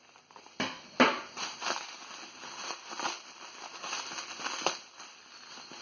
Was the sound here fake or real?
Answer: real